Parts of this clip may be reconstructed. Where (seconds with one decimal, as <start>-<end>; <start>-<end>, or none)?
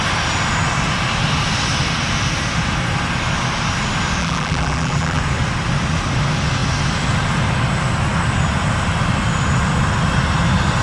4.2-5.2